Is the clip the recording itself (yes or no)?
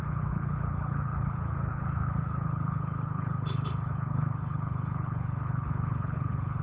no